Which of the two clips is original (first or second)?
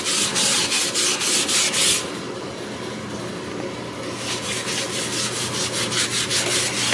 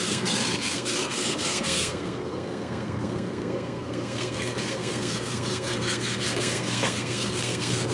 first